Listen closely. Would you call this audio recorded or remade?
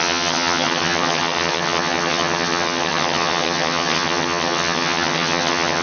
remade